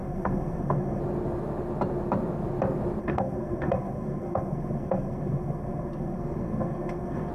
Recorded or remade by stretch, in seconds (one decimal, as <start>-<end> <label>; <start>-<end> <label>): 0.0-1.0 remade; 1.0-3.0 recorded; 3.0-7.3 remade